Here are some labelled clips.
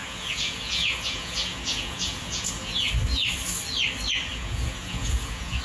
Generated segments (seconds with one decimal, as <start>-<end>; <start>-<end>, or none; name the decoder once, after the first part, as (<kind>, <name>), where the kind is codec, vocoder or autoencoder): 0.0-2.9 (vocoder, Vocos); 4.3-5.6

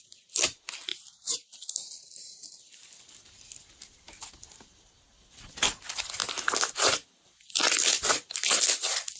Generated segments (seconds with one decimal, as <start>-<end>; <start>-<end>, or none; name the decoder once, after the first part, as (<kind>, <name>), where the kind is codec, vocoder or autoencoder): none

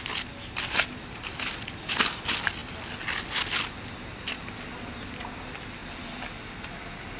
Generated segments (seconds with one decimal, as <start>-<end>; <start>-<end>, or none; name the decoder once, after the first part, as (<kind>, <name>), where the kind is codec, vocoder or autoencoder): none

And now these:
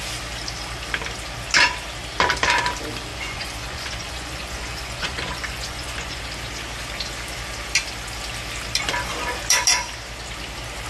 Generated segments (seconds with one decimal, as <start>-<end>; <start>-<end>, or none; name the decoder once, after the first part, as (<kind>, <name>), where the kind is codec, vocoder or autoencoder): 3.1-6.2 (vocoder, Vocos)

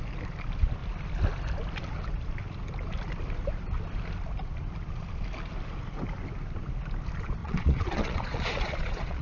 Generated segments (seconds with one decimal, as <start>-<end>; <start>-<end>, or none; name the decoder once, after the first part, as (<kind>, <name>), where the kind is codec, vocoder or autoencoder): 7.4-9.2 (vocoder, Vocos)

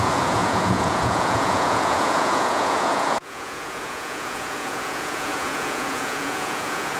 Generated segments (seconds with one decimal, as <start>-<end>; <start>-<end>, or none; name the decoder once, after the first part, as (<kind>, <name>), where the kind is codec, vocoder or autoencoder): 0.0-7.0 (vocoder, Vocos)

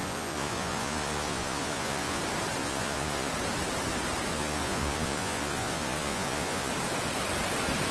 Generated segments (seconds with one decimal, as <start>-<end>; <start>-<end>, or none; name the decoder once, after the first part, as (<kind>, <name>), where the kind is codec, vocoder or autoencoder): 0.0-2.2 (vocoder, Vocos); 2.6-3.3; 4.3-6.7

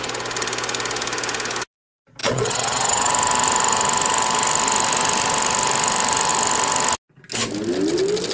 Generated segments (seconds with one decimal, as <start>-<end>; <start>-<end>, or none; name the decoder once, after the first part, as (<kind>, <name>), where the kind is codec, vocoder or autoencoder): 2.2-3.1 (vocoder, Vocos)